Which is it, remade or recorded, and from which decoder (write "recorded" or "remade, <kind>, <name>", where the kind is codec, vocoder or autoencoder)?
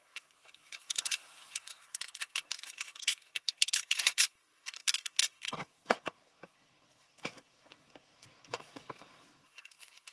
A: remade, codec, SNAC